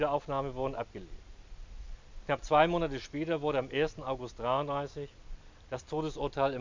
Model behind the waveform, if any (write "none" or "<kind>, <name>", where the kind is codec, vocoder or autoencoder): none